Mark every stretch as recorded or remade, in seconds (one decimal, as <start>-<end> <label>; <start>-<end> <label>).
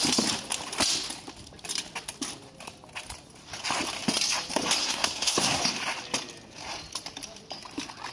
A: 0.0-4.8 recorded; 4.8-5.6 remade; 5.6-8.1 recorded